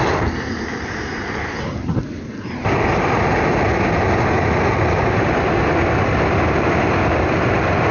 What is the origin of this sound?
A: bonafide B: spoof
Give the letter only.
A